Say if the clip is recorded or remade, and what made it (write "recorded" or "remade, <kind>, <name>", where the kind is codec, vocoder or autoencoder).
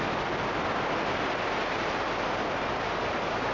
recorded